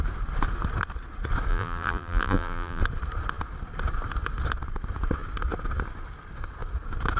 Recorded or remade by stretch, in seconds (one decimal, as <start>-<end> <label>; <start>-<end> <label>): 0.0-1.5 recorded; 1.5-2.8 remade; 2.8-7.2 recorded